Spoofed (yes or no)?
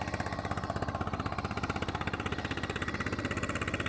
no